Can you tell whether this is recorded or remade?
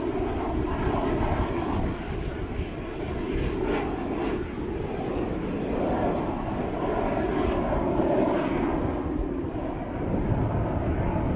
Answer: recorded